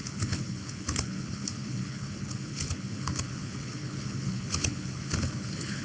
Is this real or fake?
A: fake